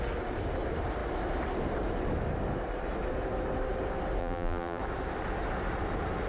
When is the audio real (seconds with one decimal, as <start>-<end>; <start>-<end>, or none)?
0.0-4.2; 4.8-6.3